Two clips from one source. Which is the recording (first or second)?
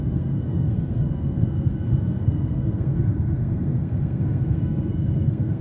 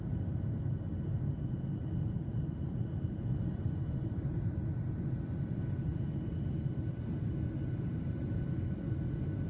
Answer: second